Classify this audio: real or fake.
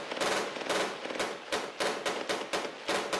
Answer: real